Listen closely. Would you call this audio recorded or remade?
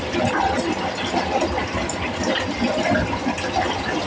recorded